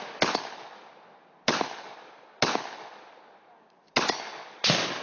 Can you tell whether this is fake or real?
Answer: real